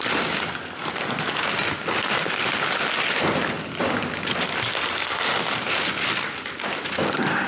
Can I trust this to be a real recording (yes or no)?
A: yes